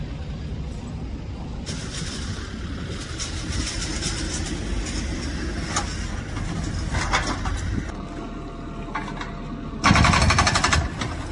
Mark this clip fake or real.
real